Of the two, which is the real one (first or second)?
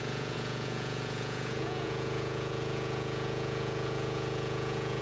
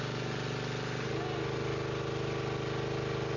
second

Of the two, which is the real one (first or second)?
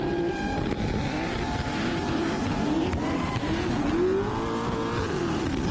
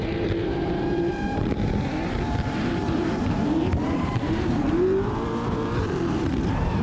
first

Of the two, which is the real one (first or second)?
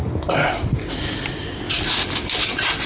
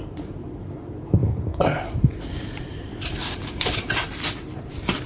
first